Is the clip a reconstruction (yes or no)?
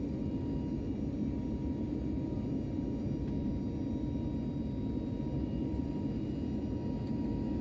no